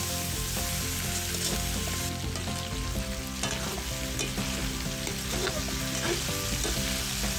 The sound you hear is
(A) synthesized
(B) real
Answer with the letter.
B